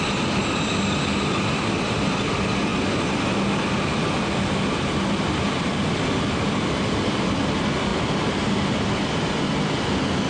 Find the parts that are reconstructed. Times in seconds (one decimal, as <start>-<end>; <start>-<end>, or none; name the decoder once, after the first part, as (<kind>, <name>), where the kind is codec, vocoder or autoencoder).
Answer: none